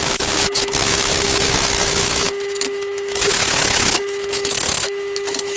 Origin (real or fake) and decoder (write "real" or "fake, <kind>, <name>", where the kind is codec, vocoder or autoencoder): fake, autoencoder, DAC-VAE